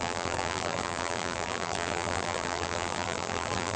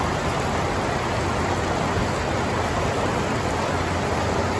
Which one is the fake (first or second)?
first